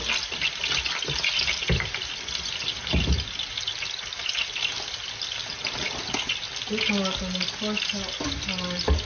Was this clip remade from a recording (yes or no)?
no